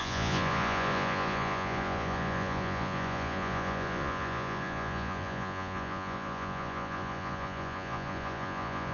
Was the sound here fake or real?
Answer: fake